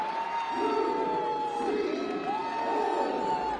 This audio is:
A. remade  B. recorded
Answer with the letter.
B